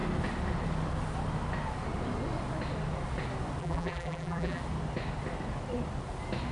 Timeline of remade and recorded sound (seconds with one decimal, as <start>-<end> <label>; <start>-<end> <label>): 0.0-3.6 recorded; 3.6-4.6 remade; 4.6-6.5 recorded